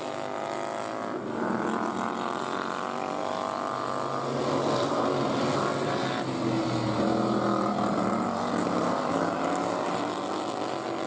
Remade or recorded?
recorded